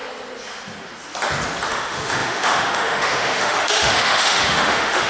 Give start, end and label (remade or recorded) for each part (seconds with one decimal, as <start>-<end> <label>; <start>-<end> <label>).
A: 0.0-1.7 recorded; 1.7-5.1 remade